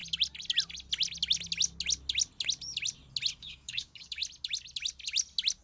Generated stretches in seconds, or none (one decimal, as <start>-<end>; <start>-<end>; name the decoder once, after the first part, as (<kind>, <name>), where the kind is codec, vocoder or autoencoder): 3.4-4.2 (codec, DAC)